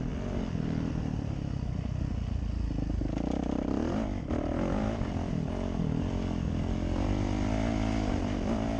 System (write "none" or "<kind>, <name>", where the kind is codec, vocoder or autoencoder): none